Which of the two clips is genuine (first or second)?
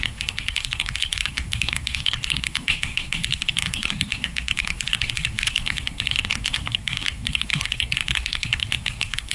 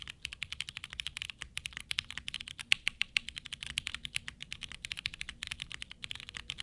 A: second